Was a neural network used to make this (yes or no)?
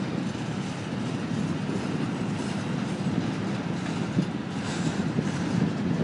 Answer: no